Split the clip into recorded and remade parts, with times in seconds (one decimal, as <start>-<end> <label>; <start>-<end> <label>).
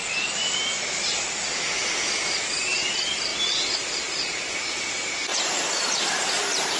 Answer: 0.0-6.8 recorded